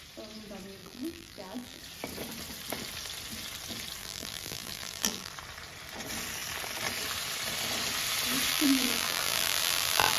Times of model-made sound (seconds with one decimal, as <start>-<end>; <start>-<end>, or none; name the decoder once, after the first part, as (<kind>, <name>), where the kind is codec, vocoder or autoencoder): 0.8-1.8 (vocoder, BigVGAN v2); 4.0-5.3; 8.5-10.2